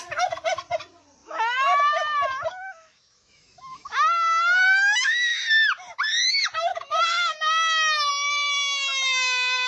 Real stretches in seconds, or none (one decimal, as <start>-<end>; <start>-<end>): 0.0-1.2; 5.4-6.7; 8.1-9.7

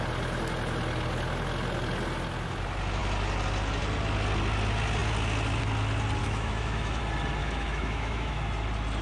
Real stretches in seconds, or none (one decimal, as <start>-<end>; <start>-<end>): 0.0-6.2; 7.0-7.4; 8.4-9.0